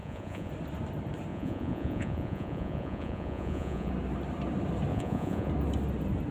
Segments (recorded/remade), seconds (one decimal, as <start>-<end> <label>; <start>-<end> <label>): 0.0-0.5 remade; 0.5-1.3 recorded; 1.3-3.9 remade; 3.9-4.9 recorded; 4.9-5.5 remade; 5.5-6.3 recorded

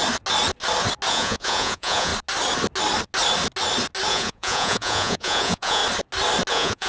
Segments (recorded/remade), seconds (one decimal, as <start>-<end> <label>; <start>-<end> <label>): 0.0-1.1 recorded; 1.1-2.1 remade; 2.1-4.1 recorded; 4.1-5.8 remade; 5.8-6.5 recorded; 6.5-6.9 remade

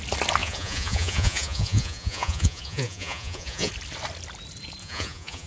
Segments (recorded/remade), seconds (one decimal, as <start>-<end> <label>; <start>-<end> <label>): 0.0-0.4 recorded; 0.4-3.7 remade; 3.7-4.8 recorded; 4.8-5.5 remade

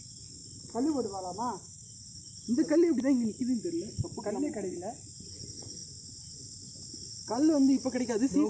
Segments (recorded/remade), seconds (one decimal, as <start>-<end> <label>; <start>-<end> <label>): 0.0-5.8 recorded; 5.8-6.4 remade; 6.4-8.5 recorded

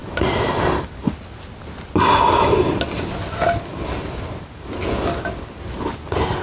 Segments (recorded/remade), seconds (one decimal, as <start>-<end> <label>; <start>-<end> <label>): 0.0-6.4 recorded

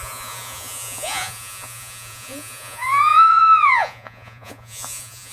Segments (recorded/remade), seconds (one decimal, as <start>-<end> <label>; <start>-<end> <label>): 0.0-5.3 remade